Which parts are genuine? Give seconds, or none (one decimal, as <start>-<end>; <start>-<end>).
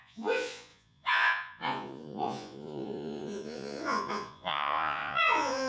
none